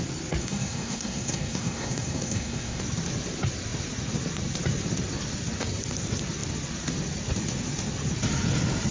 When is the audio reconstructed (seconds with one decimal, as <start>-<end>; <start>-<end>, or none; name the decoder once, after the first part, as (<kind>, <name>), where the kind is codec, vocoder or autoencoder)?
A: 0.4-2.8 (codec, SNAC)